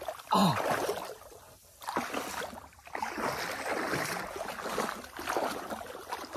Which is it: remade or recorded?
recorded